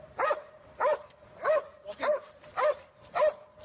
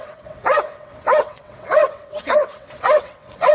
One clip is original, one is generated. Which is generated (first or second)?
second